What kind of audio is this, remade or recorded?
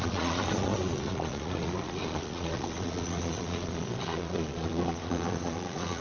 remade